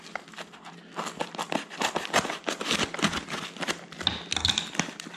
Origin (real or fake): real